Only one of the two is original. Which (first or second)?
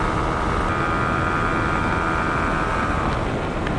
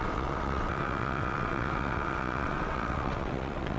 first